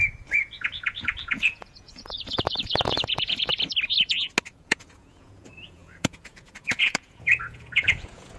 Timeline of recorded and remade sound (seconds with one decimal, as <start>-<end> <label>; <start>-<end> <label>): 0.0-3.5 remade; 3.5-4.5 recorded; 4.5-8.4 remade